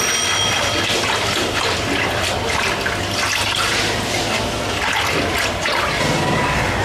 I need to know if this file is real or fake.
real